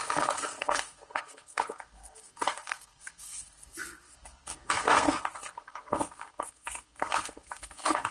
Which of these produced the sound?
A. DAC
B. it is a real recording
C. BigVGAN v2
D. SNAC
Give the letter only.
D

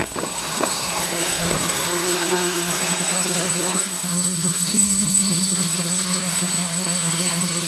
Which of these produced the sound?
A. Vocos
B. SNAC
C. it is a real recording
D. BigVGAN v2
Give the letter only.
B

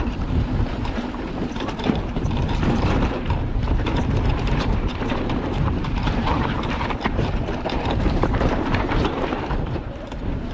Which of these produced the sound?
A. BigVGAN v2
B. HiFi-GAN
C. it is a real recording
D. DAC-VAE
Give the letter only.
A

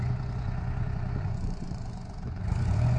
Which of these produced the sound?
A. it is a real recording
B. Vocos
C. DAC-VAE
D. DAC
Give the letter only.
B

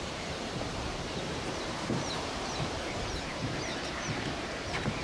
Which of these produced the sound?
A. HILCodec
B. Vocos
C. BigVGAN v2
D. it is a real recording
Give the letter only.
C